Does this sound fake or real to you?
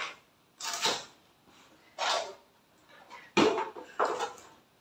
real